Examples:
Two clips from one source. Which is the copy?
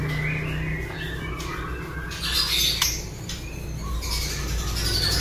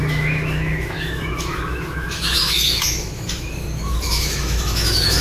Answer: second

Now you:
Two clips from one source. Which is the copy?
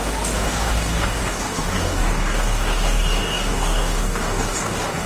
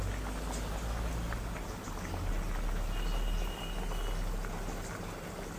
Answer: first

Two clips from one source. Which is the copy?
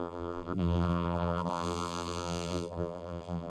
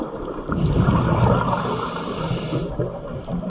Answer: first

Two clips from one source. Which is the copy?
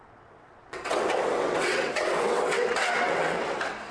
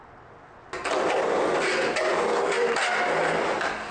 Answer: first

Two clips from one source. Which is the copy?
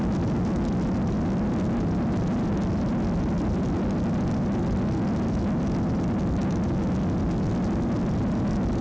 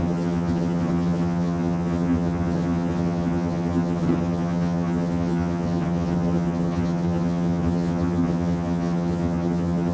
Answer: second